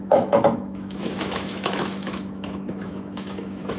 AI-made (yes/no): yes